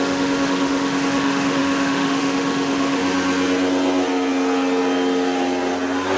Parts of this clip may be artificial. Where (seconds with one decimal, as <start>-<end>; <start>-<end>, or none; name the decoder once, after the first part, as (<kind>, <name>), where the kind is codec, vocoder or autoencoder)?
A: 0.0-3.0 (autoencoder, DAC-VAE)